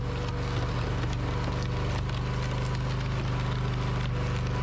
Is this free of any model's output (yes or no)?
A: yes